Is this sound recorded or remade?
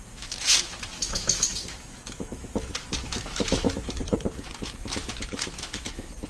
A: remade